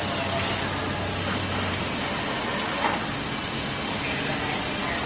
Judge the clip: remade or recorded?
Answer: recorded